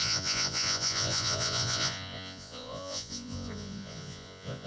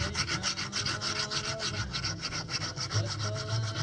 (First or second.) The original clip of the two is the second